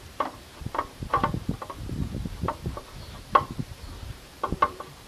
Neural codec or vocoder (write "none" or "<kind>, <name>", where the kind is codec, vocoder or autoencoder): vocoder, BigVGAN v2